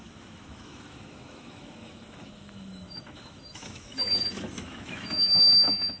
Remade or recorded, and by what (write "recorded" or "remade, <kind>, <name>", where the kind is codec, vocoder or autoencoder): remade, autoencoder, DAC-VAE